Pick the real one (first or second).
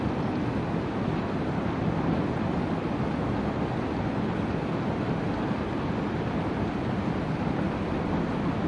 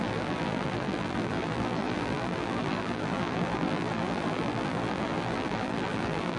first